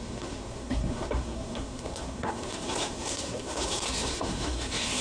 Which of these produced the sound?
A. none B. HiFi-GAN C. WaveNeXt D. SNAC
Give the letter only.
D